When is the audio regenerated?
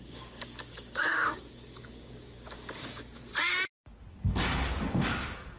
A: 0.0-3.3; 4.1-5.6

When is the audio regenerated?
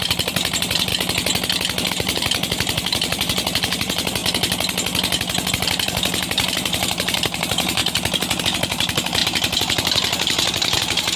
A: 0.0-0.9; 1.9-4.2; 5.5-7.8; 8.4-11.2